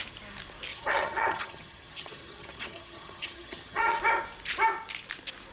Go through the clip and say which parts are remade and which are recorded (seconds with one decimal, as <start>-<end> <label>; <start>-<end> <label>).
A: 0.0-0.7 recorded; 0.7-4.0 remade; 4.0-5.5 recorded